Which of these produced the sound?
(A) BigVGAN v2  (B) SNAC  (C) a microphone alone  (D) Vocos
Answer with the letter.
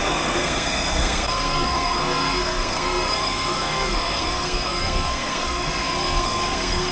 B